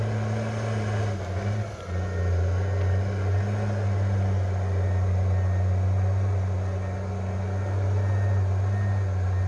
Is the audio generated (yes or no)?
no